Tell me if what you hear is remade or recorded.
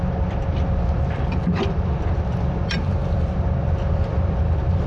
remade